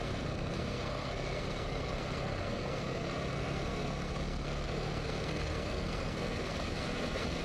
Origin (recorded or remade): remade